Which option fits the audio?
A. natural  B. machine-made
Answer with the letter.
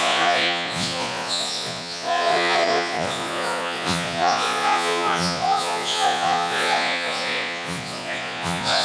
B